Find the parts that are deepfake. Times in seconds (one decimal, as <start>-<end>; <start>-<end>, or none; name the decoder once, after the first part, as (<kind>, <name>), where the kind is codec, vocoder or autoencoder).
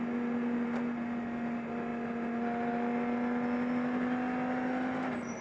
none